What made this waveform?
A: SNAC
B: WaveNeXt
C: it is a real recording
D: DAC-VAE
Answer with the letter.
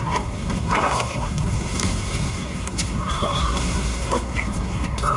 A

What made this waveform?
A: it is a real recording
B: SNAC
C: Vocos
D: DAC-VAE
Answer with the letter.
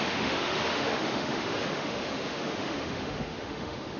D